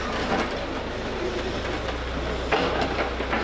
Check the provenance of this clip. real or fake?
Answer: real